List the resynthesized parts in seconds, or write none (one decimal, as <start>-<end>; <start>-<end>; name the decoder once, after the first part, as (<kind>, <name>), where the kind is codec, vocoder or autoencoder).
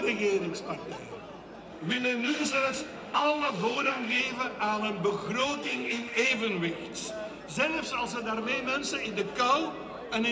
1.7-4.2 (autoencoder, DAC-VAE); 5.4-6.3